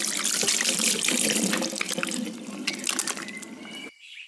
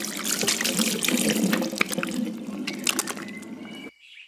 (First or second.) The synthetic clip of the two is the first